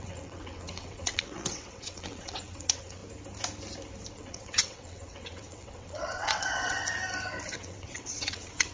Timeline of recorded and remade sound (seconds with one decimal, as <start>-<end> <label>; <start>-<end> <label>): 0.0-3.0 remade; 3.0-4.1 recorded; 4.1-6.8 remade; 6.8-7.5 recorded; 7.5-8.7 remade